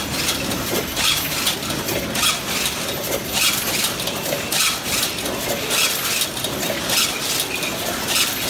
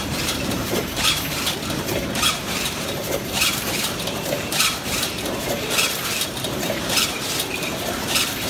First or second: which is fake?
second